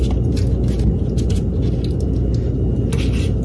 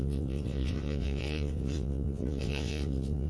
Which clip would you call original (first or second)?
first